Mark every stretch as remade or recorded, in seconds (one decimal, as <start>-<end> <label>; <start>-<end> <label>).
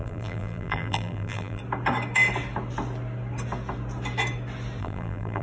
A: 0.0-1.6 remade; 1.6-4.8 recorded; 4.8-5.4 remade